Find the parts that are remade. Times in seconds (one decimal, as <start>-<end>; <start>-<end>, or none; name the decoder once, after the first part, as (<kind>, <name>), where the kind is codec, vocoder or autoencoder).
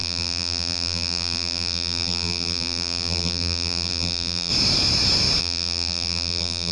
0.0-4.5 (vocoder, BigVGAN v2); 5.4-6.7